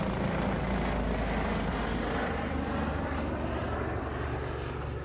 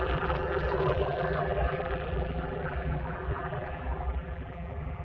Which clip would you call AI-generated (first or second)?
second